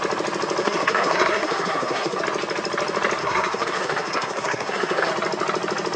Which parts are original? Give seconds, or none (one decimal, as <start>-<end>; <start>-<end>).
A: 0.0-0.6; 2.2-3.2; 5.1-6.0